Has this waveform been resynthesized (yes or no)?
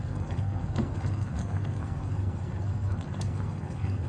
yes